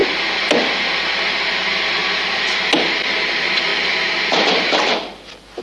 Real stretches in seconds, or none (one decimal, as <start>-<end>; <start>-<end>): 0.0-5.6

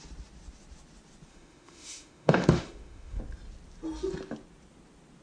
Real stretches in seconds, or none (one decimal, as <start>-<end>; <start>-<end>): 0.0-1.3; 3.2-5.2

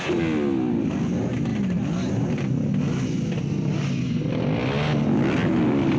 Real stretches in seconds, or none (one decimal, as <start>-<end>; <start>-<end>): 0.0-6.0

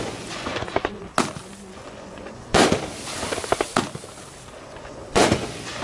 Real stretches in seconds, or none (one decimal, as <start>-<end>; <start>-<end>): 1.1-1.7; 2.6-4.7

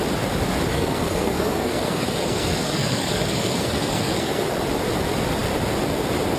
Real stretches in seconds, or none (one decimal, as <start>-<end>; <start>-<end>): 0.0-0.7; 4.5-6.4